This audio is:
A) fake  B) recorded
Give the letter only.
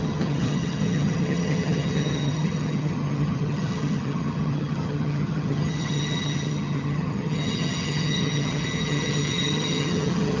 A